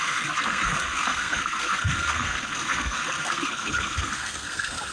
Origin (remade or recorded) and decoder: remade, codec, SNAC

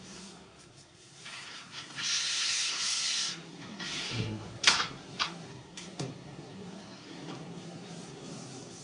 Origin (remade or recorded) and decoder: remade, codec, SNAC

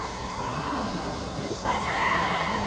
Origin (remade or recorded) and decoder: remade, codec, SNAC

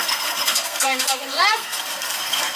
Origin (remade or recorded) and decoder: remade, codec, SNAC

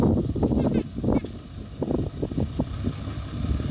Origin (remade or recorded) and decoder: recorded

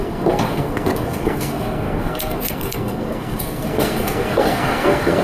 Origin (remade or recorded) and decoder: remade, codec, SNAC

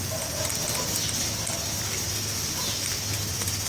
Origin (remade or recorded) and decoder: recorded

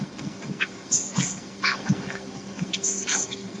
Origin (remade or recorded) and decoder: remade, codec, SNAC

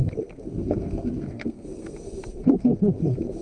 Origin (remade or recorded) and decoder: remade, codec, SNAC